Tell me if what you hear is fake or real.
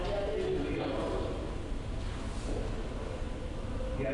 real